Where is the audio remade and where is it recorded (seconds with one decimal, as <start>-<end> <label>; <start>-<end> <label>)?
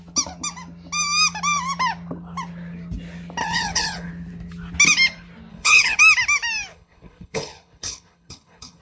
0.0-3.4 recorded; 3.4-4.1 remade; 4.1-5.5 recorded; 5.5-6.0 remade; 6.0-6.7 recorded; 6.7-8.8 remade